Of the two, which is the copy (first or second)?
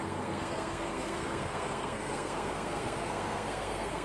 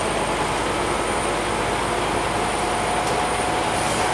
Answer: first